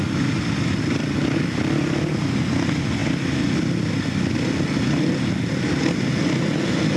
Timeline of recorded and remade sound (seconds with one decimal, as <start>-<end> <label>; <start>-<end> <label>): 0.0-7.0 recorded